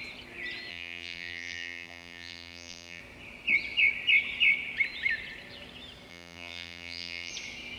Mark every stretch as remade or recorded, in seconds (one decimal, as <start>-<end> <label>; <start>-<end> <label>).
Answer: 0.0-0.7 recorded; 0.7-3.0 remade; 3.0-6.1 recorded; 6.1-7.3 remade; 7.3-7.8 recorded